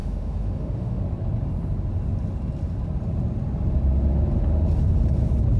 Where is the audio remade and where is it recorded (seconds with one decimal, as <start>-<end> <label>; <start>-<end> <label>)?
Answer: 0.0-1.0 remade; 1.0-5.6 recorded